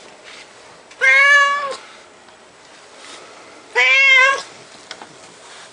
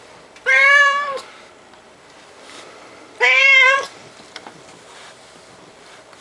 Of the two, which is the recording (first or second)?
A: first